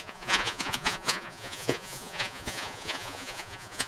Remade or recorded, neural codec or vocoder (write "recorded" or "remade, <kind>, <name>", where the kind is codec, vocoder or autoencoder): remade, vocoder, Vocos